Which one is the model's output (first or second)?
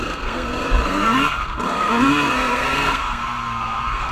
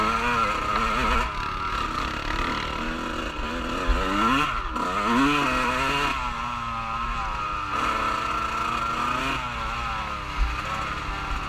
first